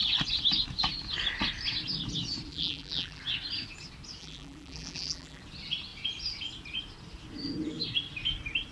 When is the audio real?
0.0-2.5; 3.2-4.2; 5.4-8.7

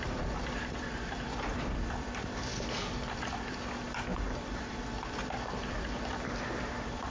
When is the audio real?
none

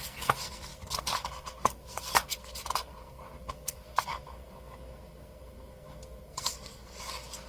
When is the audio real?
none

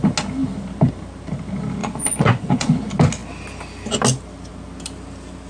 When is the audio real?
0.0-1.8; 2.7-5.5

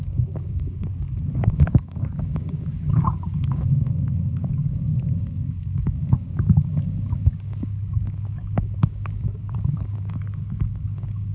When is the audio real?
0.9-1.4

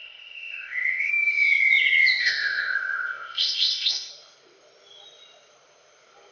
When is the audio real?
1.1-2.2; 4.1-6.3

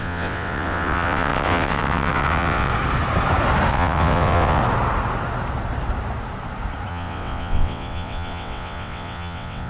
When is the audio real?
2.7-3.7; 4.6-6.9

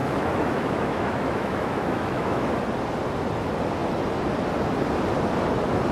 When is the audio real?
2.5-5.9